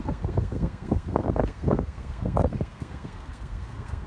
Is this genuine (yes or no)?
no